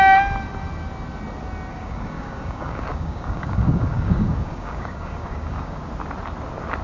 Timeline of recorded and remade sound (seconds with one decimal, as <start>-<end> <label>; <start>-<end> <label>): 0.0-1.7 recorded; 1.7-5.8 remade; 5.8-6.8 recorded

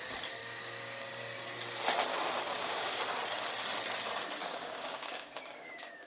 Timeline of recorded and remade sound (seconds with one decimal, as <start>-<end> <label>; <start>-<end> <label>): 0.0-0.4 recorded; 0.4-1.1 remade; 1.1-2.1 recorded; 2.1-3.0 remade; 3.0-4.4 recorded; 4.4-6.1 remade

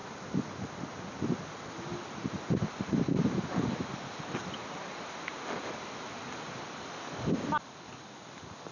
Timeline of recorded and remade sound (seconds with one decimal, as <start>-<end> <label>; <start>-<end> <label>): 0.0-8.7 recorded

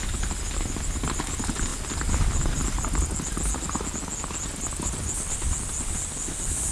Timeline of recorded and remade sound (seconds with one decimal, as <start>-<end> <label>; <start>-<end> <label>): 0.0-6.7 recorded

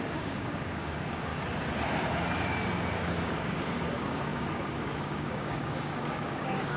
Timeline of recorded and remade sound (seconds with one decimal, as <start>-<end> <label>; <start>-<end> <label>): 0.0-1.3 remade; 1.3-3.0 recorded; 3.0-6.8 remade

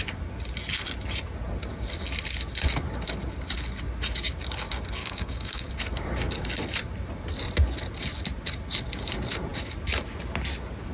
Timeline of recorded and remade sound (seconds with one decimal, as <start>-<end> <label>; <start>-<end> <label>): 0.0-5.0 recorded; 5.0-5.7 remade; 5.7-10.9 recorded

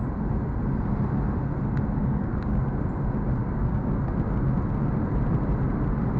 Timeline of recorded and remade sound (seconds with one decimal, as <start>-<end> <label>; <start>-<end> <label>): 0.0-2.0 recorded; 2.0-2.6 remade; 2.6-3.4 recorded; 3.4-3.9 remade; 3.9-6.2 recorded